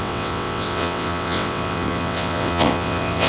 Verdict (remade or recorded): remade